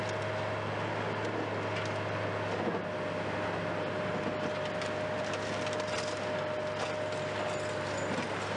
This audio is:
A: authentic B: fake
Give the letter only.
A